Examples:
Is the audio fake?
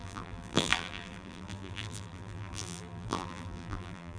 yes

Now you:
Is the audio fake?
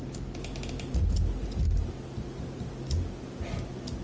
no